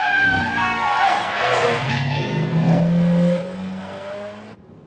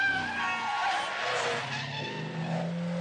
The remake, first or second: first